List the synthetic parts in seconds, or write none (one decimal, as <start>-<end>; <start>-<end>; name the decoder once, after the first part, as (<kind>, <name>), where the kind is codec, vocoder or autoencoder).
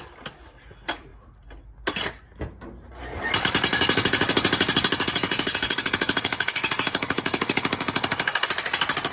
3.7-8.5 (codec, DAC)